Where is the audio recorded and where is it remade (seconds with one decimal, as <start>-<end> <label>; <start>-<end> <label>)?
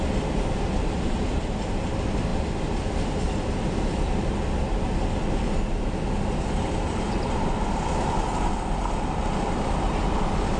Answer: 0.0-10.6 recorded